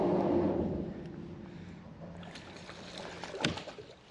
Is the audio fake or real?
real